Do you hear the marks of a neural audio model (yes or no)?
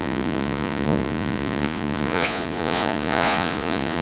yes